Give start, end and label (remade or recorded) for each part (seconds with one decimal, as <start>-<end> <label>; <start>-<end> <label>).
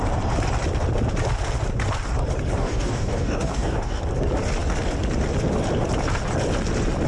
0.0-2.6 recorded; 2.6-4.0 remade; 4.0-7.1 recorded